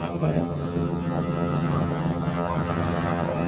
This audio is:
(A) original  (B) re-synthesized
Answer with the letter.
B